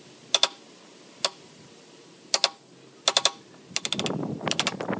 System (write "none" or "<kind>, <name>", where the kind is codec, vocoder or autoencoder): none